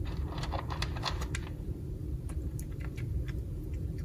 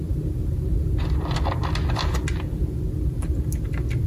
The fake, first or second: first